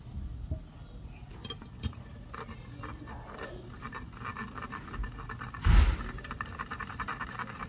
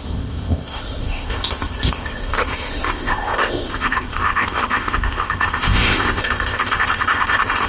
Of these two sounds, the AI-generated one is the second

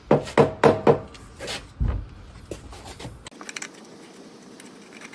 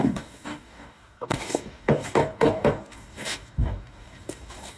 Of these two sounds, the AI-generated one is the second